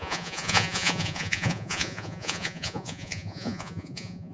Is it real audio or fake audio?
fake